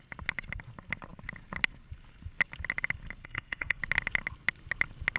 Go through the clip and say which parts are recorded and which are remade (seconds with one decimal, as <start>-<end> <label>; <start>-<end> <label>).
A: 0.0-3.2 recorded; 3.2-3.8 remade; 3.8-5.2 recorded